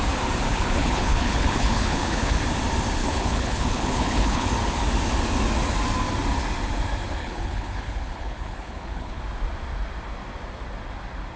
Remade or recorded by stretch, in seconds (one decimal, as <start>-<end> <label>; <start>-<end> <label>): 0.0-0.5 recorded; 0.5-2.4 remade; 2.4-3.0 recorded; 3.0-4.5 remade; 4.5-7.2 recorded; 7.2-9.2 remade; 9.2-11.4 recorded